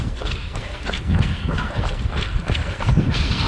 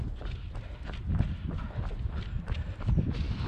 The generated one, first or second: first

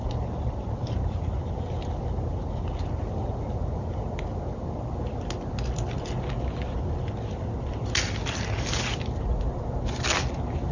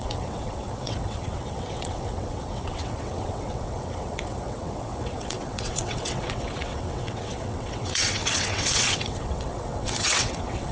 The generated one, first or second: second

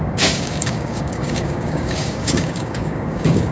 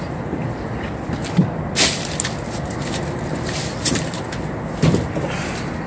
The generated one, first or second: first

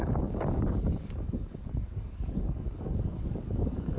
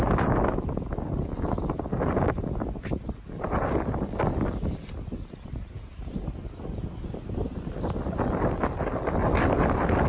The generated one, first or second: first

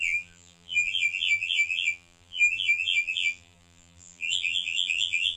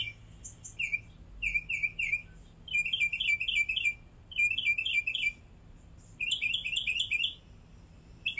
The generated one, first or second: first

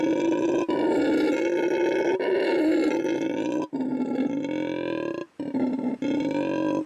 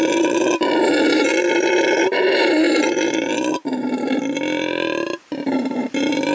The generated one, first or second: second